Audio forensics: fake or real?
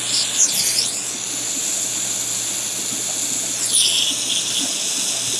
real